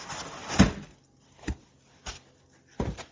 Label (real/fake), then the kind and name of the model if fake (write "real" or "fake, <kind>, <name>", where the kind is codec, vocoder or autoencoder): real